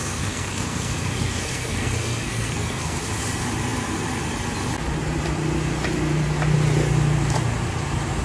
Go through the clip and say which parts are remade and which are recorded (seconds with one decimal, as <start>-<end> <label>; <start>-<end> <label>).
0.0-3.0 remade; 3.0-8.2 recorded